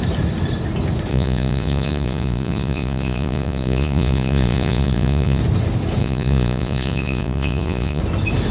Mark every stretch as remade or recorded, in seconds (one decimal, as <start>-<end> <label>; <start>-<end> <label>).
0.0-1.1 recorded; 1.1-5.4 remade; 5.4-6.0 recorded; 6.0-8.0 remade; 8.0-8.5 recorded